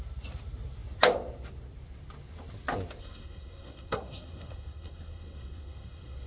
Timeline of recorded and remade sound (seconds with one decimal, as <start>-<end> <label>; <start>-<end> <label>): 0.0-3.0 recorded; 3.0-6.3 remade